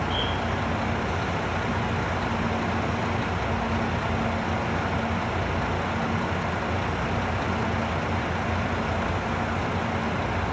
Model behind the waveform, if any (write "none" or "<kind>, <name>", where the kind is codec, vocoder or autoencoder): none